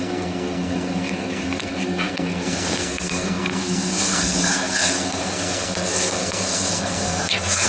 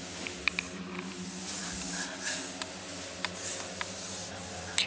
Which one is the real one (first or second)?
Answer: second